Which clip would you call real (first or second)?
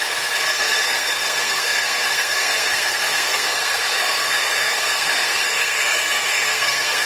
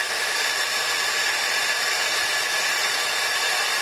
second